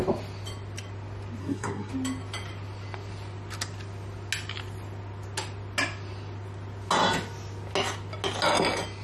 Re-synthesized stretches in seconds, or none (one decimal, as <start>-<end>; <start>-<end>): 1.4-1.9